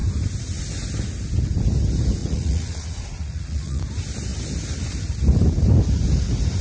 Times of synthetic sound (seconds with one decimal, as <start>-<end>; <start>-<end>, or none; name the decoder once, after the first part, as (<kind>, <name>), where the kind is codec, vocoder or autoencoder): 2.2-3.8 (vocoder, Vocos)